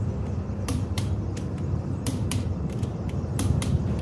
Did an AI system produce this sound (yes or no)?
yes